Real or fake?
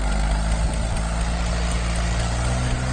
real